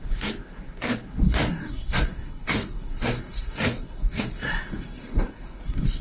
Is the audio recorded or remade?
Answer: remade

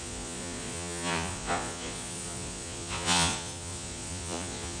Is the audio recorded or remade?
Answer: remade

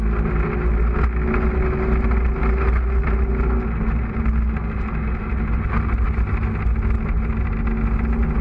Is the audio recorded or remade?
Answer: recorded